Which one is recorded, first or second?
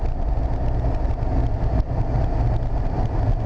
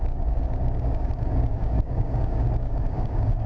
first